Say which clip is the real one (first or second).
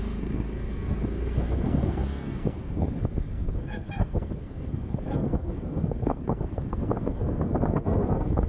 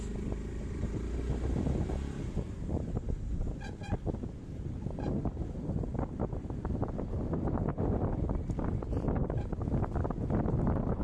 second